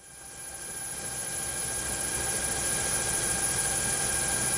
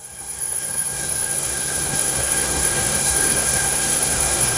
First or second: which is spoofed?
second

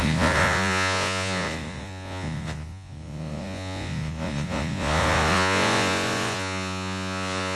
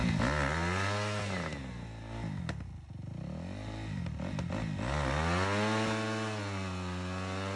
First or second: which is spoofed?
first